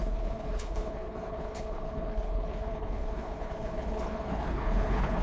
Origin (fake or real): fake